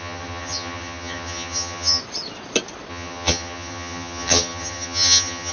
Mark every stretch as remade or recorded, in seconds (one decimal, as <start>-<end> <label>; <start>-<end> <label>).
0.0-2.0 remade; 2.0-2.9 recorded; 2.9-5.5 remade